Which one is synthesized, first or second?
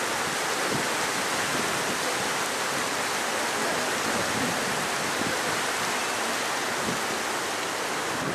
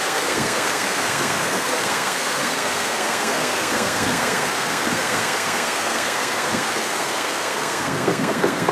second